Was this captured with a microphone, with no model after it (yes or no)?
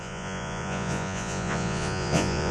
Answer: no